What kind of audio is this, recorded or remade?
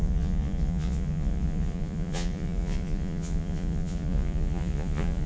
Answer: remade